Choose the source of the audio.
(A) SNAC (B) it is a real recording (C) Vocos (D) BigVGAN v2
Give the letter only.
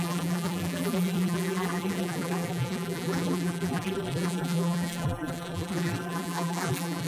D